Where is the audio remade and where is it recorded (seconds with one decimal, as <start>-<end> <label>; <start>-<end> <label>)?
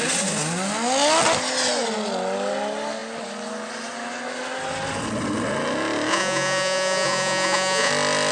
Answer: 0.0-6.1 recorded; 6.1-7.9 remade; 7.9-8.3 recorded